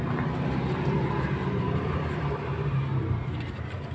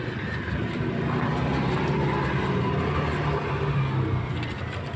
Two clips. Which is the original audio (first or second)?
second